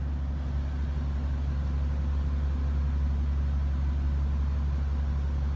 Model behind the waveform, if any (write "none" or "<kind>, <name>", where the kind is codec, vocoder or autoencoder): none